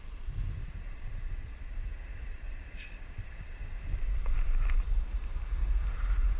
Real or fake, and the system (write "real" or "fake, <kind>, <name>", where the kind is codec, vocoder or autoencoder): fake, vocoder, BigVGAN v2